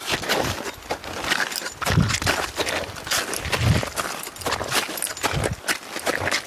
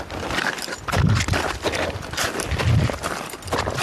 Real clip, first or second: first